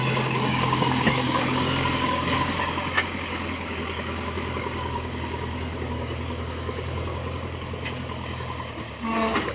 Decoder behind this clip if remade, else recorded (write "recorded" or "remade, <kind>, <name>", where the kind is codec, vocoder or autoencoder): remade, codec, DAC